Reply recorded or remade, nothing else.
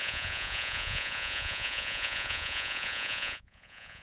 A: remade